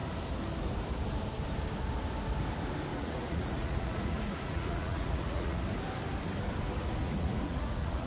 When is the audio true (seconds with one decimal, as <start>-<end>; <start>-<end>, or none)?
0.0-2.9; 5.6-7.0